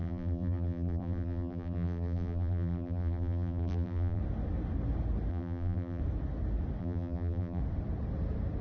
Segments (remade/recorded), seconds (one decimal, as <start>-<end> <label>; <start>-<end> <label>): 0.0-4.2 remade; 4.2-5.3 recorded; 5.3-6.0 remade; 6.0-6.8 recorded; 6.8-7.6 remade; 7.6-8.6 recorded